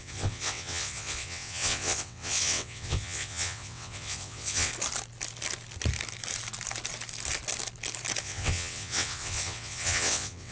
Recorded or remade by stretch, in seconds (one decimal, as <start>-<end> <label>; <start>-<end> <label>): 0.0-4.7 remade; 4.7-8.2 recorded; 8.2-10.5 remade